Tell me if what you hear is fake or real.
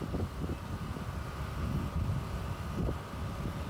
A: real